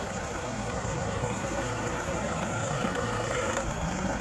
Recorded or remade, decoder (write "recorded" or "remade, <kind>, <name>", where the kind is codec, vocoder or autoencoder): remade, codec, SNAC